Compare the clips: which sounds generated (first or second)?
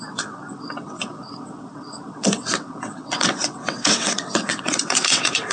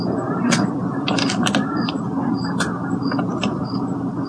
first